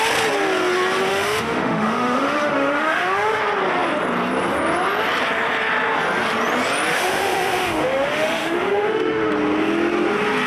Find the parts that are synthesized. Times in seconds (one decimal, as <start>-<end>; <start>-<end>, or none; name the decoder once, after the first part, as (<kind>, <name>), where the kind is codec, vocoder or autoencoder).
1.1-3.4 (autoencoder, DAC-VAE); 6.9-9.3